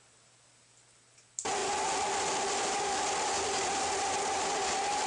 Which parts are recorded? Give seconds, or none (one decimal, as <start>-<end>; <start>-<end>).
0.0-5.1